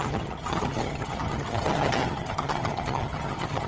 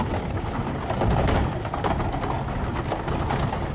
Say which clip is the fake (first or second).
first